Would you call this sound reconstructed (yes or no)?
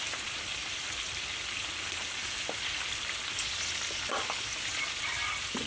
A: no